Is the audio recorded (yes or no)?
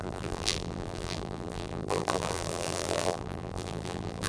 no